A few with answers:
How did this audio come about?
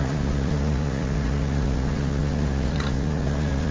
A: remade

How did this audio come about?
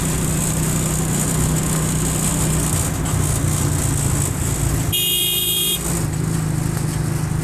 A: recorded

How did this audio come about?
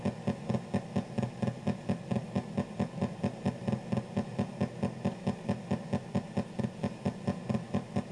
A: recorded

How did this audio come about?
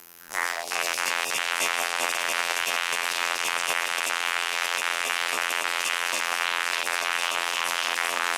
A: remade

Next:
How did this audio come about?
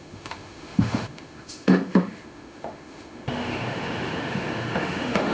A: remade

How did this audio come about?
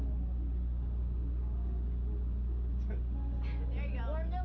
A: recorded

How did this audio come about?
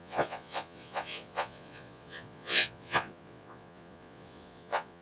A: remade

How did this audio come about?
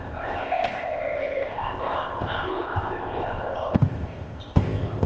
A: remade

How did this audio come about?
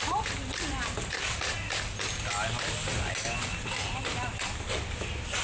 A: recorded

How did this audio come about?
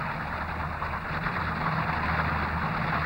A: recorded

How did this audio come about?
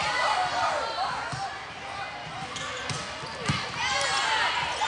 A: recorded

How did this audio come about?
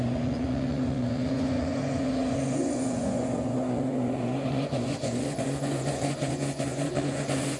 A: remade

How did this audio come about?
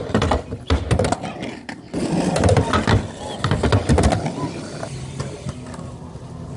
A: recorded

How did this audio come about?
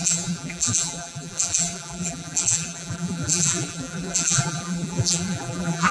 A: remade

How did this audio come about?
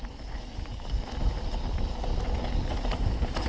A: recorded